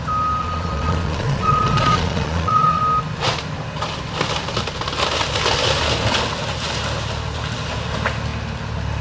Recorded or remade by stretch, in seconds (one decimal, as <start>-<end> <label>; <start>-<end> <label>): 0.0-0.4 recorded; 0.4-2.8 remade; 2.8-9.0 recorded